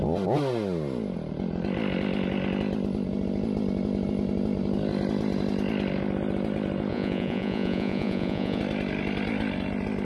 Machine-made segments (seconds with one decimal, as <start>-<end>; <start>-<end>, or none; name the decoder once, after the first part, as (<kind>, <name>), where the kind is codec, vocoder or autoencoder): 6.9-8.6 (vocoder, Vocos)

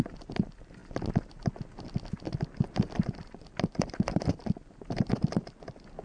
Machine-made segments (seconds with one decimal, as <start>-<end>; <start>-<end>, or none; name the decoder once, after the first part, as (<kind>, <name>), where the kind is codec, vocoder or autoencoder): none

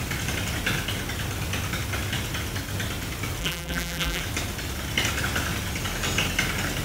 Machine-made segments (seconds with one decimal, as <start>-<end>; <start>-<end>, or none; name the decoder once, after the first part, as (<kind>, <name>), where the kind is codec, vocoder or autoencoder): 3.4-4.2 (vocoder, BigVGAN v2)